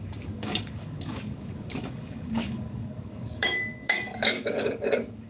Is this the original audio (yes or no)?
no